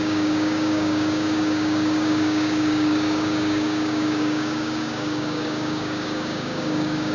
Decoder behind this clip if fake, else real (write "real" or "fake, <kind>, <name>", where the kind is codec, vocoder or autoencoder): fake, codec, DAC